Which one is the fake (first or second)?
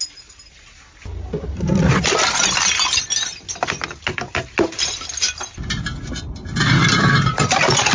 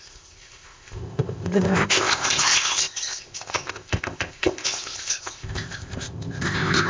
second